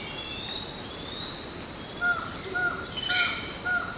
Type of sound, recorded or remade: recorded